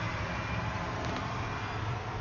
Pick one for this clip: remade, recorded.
recorded